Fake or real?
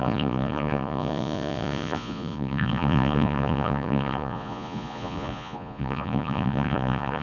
fake